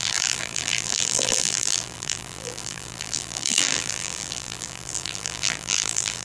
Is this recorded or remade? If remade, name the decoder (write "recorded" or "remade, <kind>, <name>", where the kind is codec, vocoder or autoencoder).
remade, vocoder, BigVGAN v2